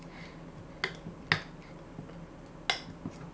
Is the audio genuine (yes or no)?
yes